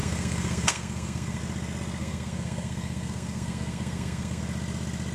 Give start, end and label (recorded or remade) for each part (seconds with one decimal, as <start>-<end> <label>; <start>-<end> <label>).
0.0-1.4 remade; 1.4-2.0 recorded; 2.0-4.4 remade; 4.4-5.1 recorded